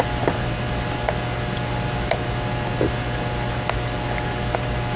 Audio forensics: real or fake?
real